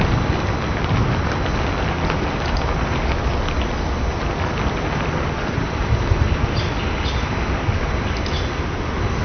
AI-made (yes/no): no